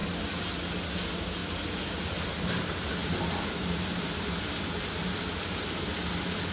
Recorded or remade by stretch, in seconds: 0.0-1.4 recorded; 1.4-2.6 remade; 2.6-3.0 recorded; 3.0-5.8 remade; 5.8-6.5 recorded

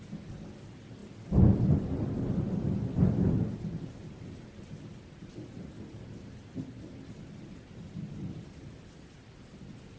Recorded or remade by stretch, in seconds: 0.0-10.0 recorded

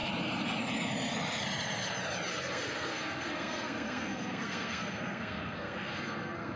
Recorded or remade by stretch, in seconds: 0.0-2.3 recorded; 2.3-6.6 remade

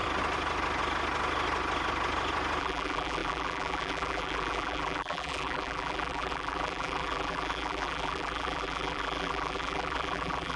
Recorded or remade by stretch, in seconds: 0.0-2.6 recorded; 2.6-10.6 remade

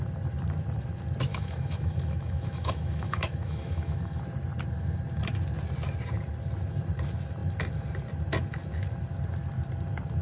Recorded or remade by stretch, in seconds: 0.0-1.3 recorded; 1.3-4.2 remade; 4.2-10.2 recorded

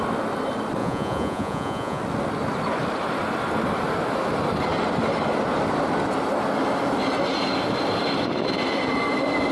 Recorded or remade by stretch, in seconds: 0.0-0.8 recorded; 0.8-2.0 remade; 2.0-9.5 recorded

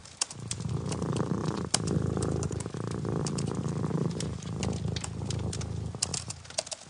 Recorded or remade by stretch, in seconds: 0.0-0.7 remade; 0.7-1.4 recorded; 1.4-4.6 remade; 4.6-6.9 recorded